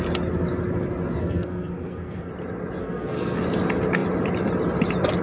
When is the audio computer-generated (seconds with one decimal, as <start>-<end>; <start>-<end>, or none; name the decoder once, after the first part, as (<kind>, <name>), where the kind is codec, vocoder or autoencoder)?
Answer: 1.2-2.3 (codec, SNAC); 2.8-3.4